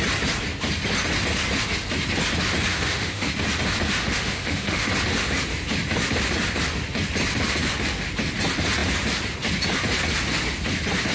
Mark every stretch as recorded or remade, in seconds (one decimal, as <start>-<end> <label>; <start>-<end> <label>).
0.0-2.7 recorded; 2.7-3.3 remade; 3.3-4.0 recorded; 4.0-4.9 remade; 4.9-11.1 recorded

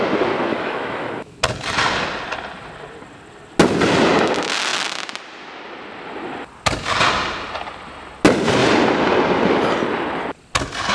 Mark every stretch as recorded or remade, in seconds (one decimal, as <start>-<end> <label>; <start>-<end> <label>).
0.0-0.5 recorded; 0.5-1.4 remade; 1.4-10.9 recorded

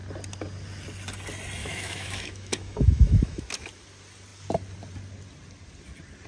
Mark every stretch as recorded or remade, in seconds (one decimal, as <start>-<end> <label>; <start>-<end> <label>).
0.0-1.6 recorded; 1.6-3.4 remade; 3.4-6.3 recorded

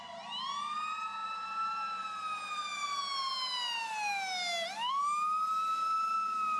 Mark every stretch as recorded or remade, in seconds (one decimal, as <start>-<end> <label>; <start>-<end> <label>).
0.0-6.6 recorded

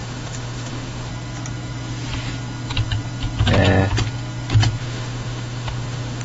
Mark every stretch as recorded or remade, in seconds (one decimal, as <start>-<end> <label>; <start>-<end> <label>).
0.0-1.1 remade; 1.1-4.8 recorded; 4.8-6.2 remade

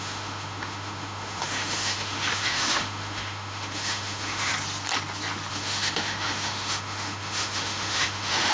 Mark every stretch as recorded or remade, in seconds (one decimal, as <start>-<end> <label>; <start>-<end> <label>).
0.0-4.5 remade; 4.5-5.5 recorded; 5.5-8.5 remade